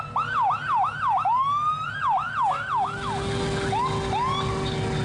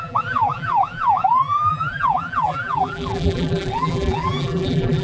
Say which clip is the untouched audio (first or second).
first